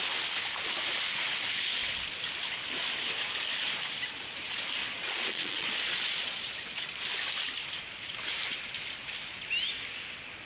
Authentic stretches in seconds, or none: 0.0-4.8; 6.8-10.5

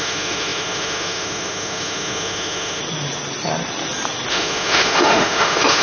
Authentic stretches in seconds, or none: 2.8-4.3

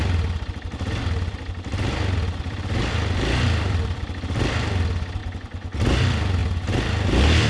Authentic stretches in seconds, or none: 5.2-6.0; 6.4-7.5

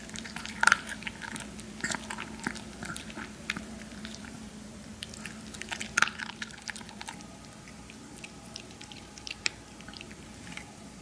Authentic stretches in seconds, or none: 4.9-6.3

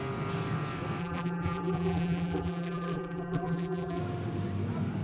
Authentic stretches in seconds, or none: 0.0-1.0; 4.0-5.0

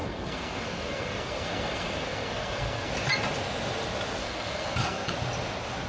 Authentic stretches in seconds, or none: 2.9-4.2; 5.1-5.9